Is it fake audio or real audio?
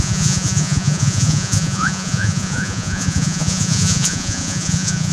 fake